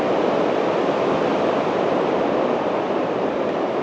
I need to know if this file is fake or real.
fake